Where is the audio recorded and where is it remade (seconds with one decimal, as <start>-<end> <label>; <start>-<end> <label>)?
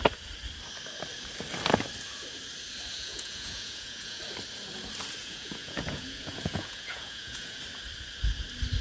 0.0-2.9 recorded; 2.9-4.2 remade; 4.2-5.2 recorded; 5.2-7.6 remade; 7.6-8.8 recorded